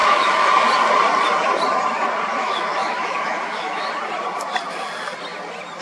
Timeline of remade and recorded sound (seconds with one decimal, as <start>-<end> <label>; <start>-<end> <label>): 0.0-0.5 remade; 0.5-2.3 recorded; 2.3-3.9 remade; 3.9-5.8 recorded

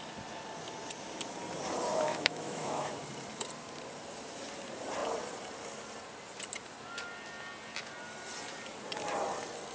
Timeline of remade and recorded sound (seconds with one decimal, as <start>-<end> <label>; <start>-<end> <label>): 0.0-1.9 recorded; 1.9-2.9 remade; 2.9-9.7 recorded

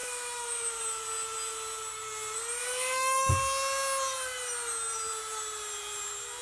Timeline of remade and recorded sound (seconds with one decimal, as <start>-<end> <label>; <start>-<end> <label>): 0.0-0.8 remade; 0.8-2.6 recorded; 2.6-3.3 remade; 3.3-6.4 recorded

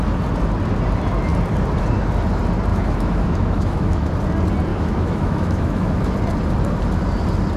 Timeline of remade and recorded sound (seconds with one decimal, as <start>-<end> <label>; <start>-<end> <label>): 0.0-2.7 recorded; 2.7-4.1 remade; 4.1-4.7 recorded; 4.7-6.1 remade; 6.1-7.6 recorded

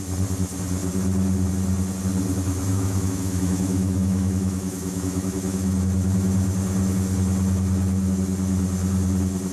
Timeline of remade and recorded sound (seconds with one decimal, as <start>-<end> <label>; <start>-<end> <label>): 0.0-2.7 recorded; 2.7-5.7 remade; 5.7-9.5 recorded

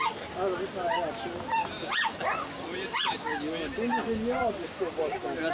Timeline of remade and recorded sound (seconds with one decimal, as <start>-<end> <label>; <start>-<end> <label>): 0.0-5.5 recorded